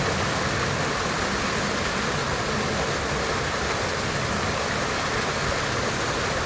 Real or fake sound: real